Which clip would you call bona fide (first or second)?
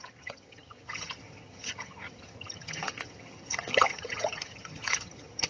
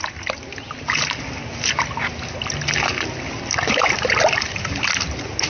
second